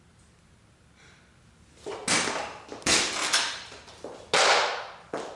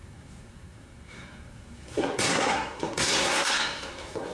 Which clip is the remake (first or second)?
second